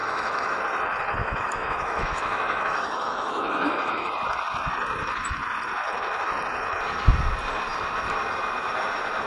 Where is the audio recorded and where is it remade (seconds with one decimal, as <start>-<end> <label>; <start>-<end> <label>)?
0.0-0.6 remade; 0.6-1.2 recorded; 1.2-4.1 remade; 4.1-9.3 recorded